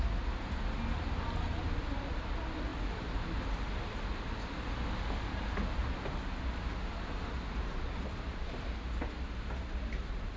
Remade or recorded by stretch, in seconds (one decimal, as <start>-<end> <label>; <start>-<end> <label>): 0.0-10.4 recorded